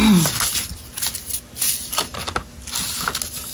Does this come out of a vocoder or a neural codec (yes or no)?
no